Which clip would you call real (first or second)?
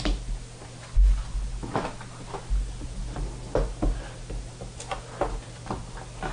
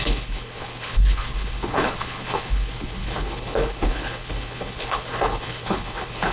first